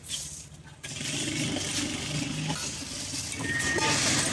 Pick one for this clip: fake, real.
real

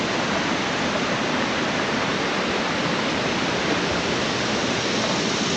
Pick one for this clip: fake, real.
real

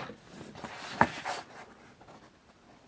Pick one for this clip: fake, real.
real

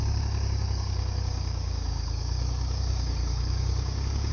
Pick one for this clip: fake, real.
fake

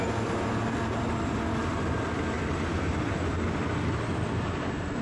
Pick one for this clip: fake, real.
real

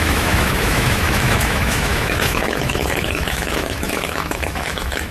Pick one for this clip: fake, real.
fake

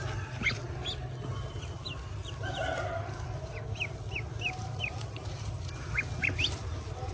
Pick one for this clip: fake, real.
real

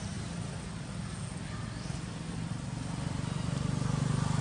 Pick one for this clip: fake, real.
real